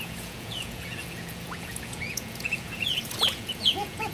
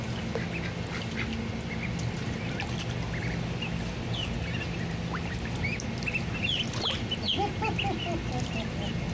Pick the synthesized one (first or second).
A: first